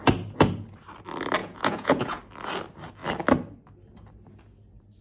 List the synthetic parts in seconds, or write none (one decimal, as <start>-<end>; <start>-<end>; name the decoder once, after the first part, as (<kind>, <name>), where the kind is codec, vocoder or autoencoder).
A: 1.4-2.2 (vocoder, Vocos)